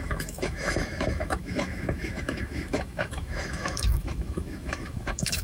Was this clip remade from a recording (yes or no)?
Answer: yes